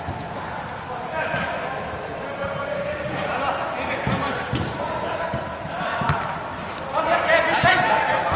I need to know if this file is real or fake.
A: real